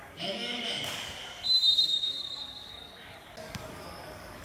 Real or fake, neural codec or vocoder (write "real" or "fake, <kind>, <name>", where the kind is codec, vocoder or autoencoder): fake, codec, DAC